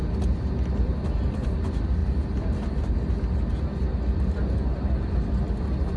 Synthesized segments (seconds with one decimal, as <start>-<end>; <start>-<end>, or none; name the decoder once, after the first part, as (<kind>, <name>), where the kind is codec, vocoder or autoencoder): none